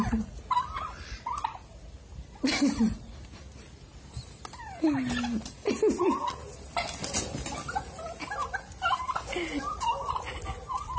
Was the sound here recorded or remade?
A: recorded